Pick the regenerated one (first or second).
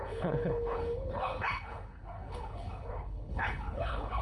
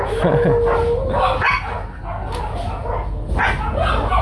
first